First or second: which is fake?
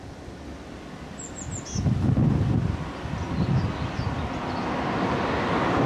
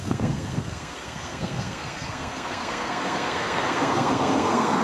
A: second